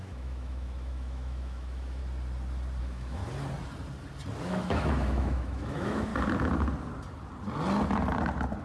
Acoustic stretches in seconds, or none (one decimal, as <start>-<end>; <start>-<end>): 2.0-2.8; 3.2-4.4; 6.1-8.6